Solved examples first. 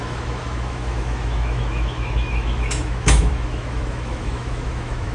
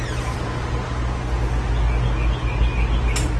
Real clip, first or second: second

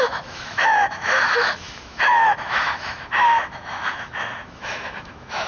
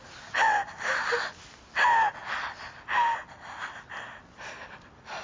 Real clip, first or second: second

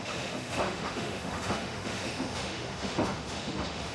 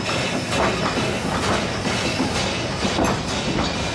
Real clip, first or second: second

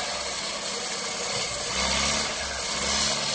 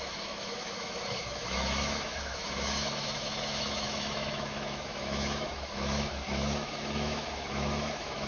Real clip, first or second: first